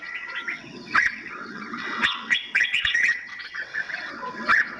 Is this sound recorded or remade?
remade